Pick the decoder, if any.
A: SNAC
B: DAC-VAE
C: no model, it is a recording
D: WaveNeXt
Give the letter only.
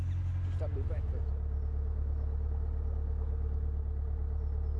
C